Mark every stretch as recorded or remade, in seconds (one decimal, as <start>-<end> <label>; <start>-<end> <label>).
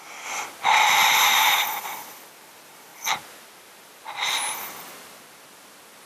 0.0-2.9 recorded; 2.9-4.0 remade; 4.0-6.1 recorded